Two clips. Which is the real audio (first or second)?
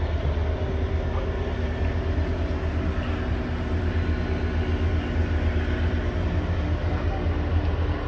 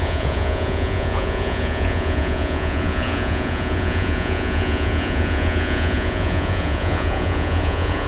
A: first